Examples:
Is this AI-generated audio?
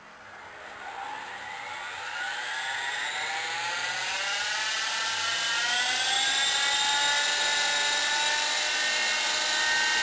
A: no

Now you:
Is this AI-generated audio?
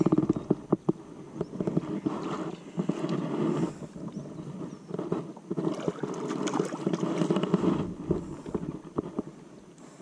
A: no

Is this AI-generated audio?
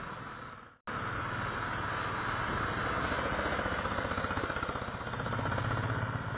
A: no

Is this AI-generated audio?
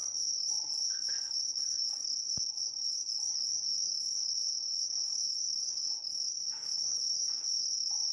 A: yes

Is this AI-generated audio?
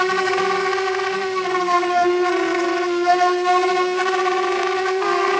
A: yes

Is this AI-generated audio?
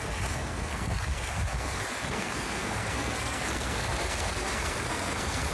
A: yes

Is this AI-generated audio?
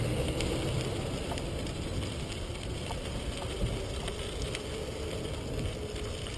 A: no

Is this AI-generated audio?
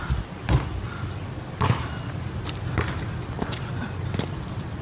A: no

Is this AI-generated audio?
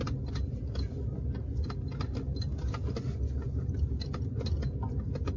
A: no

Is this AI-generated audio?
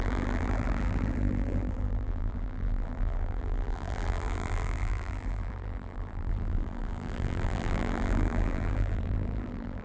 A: yes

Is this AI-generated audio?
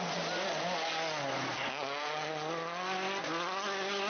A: no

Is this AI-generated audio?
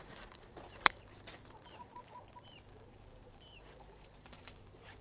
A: yes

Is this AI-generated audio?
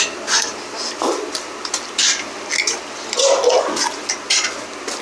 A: no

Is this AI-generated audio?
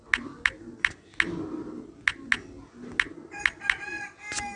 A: no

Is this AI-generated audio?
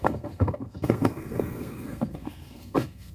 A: yes